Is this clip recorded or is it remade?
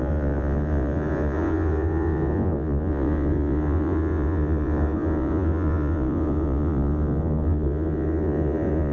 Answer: remade